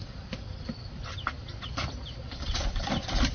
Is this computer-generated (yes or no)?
yes